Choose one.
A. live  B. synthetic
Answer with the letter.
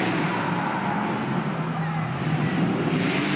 A